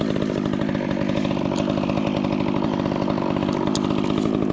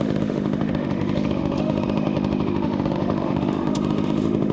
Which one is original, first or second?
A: first